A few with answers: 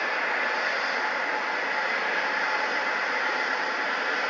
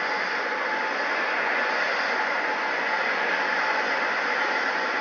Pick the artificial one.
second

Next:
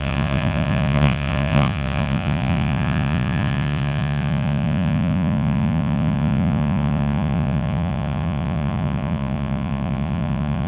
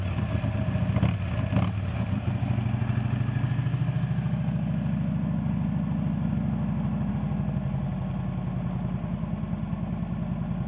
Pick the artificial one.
first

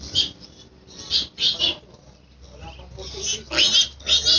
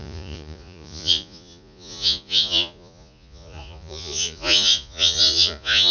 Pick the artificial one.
second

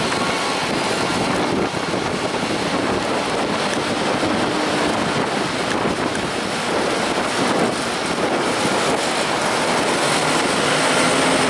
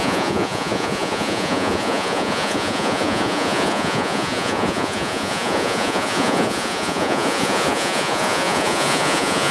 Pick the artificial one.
second